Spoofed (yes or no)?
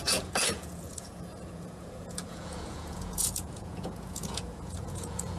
yes